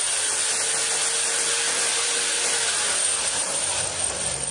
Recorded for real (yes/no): yes